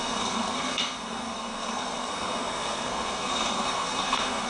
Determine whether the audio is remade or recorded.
remade